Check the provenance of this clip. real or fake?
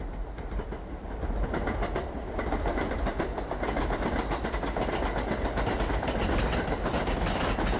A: real